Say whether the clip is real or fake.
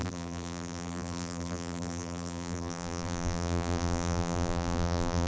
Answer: fake